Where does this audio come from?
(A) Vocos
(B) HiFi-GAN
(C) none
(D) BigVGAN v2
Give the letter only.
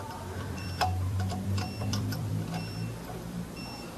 D